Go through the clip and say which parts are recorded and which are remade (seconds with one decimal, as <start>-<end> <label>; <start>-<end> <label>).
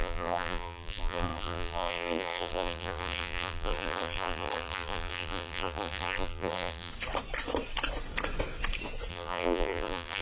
0.0-6.9 remade; 6.9-9.1 recorded; 9.1-10.2 remade